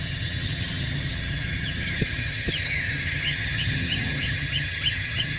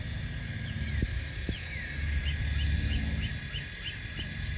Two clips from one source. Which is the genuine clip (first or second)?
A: second